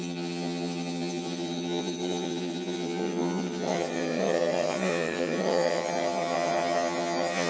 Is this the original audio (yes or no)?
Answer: no